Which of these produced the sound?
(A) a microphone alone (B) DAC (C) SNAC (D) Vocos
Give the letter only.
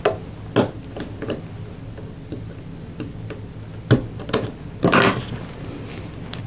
A